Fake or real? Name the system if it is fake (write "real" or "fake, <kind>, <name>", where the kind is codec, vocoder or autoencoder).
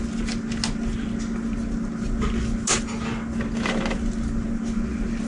real